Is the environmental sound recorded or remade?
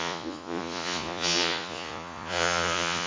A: remade